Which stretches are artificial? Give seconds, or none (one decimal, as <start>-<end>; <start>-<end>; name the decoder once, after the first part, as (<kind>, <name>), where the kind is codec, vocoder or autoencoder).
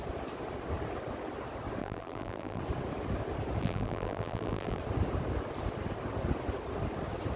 1.8-2.6 (vocoder, BigVGAN v2); 3.6-4.8